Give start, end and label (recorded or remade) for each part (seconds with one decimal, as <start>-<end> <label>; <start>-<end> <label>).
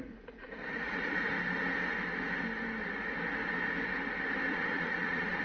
0.0-1.3 remade; 1.3-4.5 recorded; 4.5-5.4 remade